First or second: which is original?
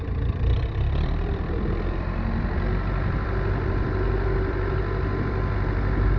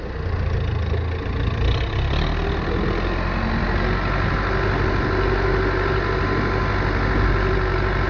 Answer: second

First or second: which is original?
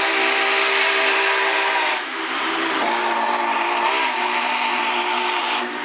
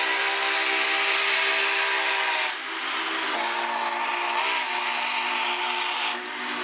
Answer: second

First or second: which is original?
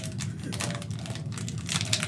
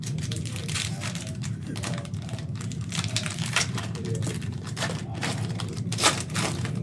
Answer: first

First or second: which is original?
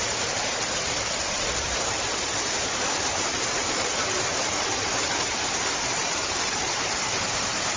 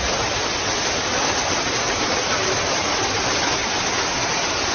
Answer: second